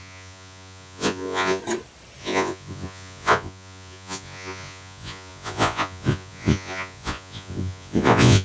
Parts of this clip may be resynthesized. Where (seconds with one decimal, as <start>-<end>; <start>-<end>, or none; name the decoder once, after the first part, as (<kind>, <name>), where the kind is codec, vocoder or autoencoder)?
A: 0.0-1.6 (vocoder, Vocos); 2.2-8.4